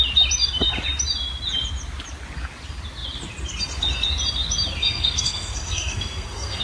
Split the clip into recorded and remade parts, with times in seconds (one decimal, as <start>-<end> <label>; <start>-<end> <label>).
0.0-4.8 recorded; 4.8-6.6 remade